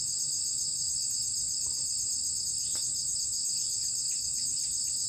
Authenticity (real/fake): real